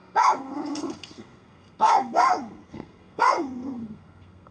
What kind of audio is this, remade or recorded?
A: remade